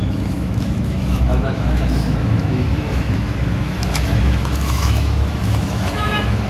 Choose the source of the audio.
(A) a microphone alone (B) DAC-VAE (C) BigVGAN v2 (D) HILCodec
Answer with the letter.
B